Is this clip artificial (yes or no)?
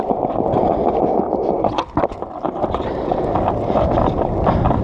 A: no